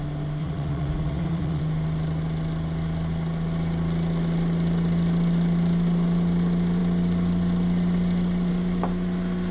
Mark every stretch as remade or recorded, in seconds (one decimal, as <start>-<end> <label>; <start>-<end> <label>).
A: 0.0-0.4 recorded; 0.4-1.6 remade; 1.6-9.5 recorded